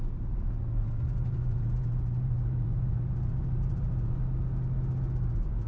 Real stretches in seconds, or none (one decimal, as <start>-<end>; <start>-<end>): 0.0-0.8; 4.2-5.7